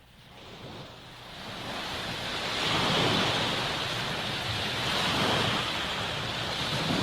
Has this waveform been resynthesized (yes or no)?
no